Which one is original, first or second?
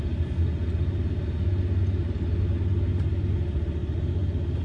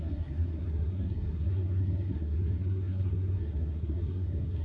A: first